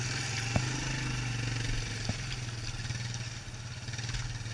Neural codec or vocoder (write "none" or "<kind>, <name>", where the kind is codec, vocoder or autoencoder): none